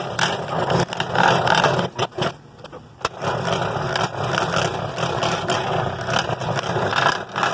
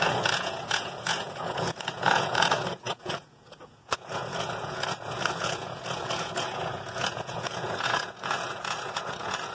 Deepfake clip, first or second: second